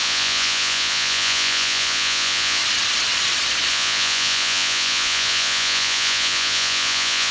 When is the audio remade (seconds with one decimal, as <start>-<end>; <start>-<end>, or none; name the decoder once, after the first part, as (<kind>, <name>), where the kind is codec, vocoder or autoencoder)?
0.0-2.6 (vocoder, Vocos); 3.7-7.3